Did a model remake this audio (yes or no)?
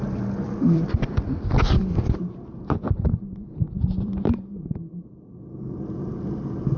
yes